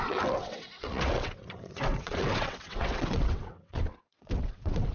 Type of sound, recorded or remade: remade